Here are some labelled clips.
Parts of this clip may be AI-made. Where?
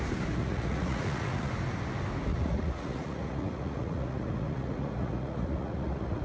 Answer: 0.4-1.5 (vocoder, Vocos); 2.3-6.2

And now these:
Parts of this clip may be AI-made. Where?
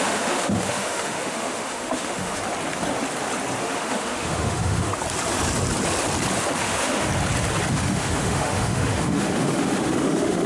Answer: 0.0-2.4 (autoencoder, DAC-VAE); 3.6-4.9; 6.6-7.1; 7.7-10.5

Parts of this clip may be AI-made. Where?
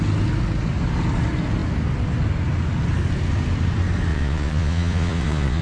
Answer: 4.1-5.6 (vocoder, Vocos)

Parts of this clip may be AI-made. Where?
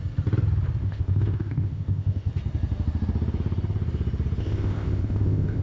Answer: 0.8-2.3 (codec, ZipCodec); 4.4-5.6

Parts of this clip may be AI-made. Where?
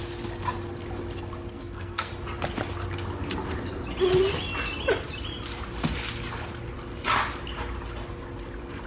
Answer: 1.5-2.1 (codec, SNAC)